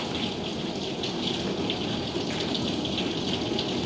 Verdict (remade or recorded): recorded